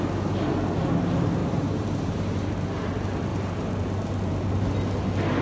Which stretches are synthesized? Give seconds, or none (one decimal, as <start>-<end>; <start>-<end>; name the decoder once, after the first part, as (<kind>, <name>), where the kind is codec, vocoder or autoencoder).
1.4-2.2 (vocoder, BigVGAN v2)